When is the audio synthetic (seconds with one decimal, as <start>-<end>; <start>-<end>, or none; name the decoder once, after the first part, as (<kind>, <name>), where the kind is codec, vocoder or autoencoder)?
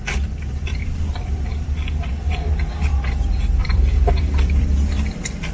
3.6-5.0 (vocoder, BigVGAN v2)